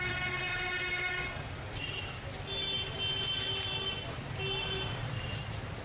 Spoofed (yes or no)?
no